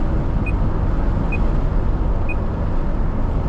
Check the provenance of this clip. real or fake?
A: real